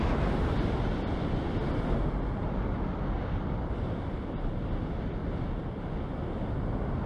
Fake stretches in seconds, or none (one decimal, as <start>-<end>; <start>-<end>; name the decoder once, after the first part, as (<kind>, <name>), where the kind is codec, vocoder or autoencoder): none